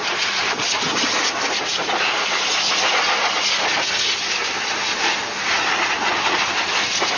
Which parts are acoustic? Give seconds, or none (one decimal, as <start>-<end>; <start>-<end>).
0.0-7.2